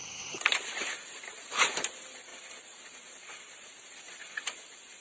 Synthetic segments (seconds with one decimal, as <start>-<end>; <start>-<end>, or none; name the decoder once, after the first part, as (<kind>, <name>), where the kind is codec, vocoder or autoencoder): 0.0-1.7 (vocoder, BigVGAN v2)